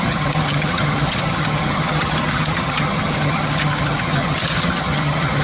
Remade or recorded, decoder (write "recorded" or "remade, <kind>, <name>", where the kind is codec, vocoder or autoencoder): remade, vocoder, HiFi-GAN